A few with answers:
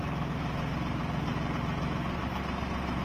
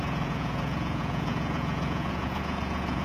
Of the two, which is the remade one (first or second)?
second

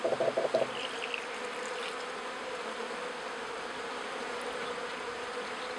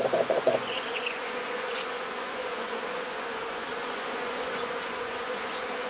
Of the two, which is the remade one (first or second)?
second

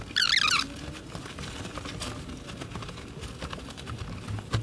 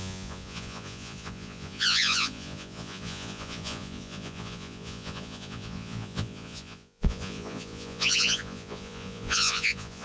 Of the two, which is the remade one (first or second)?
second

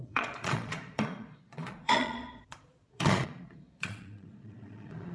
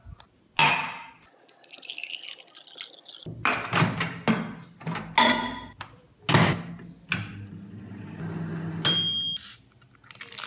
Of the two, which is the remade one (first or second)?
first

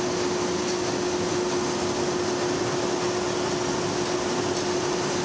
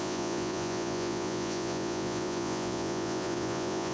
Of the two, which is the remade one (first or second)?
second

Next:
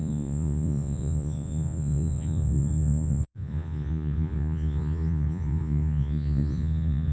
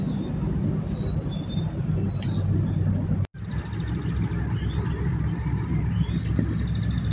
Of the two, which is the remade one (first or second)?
first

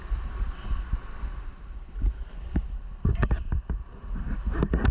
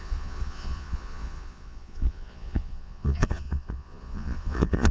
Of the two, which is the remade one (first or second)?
second